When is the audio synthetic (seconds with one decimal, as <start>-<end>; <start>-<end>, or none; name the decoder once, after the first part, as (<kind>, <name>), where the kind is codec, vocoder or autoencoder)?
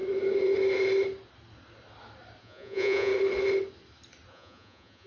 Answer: 2.4-3.1 (vocoder, Vocos); 4.3-5.1